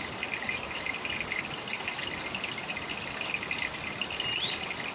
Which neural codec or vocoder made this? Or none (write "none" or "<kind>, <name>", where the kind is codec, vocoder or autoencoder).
none